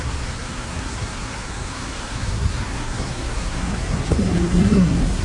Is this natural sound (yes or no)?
no